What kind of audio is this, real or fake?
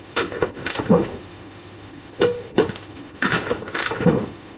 fake